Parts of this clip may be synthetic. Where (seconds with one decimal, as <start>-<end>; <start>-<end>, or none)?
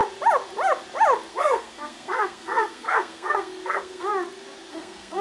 1.3-4.1; 4.7-5.2